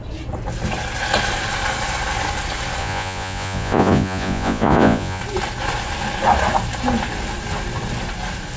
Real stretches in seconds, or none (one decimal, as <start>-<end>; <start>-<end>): 0.0-2.8; 5.2-8.6